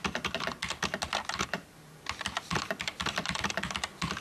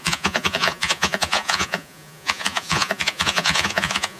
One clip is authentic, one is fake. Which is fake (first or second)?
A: second